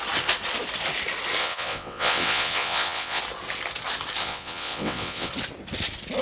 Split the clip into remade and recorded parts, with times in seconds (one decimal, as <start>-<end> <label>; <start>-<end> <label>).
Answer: 0.0-1.4 recorded; 1.4-3.2 remade; 3.2-4.2 recorded; 4.2-5.3 remade; 5.3-6.2 recorded